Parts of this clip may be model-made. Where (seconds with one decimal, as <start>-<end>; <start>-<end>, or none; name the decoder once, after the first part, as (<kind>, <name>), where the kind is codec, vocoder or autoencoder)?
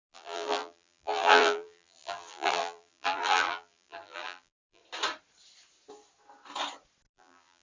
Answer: 0.0-4.8 (vocoder, BigVGAN v2); 7.1-7.6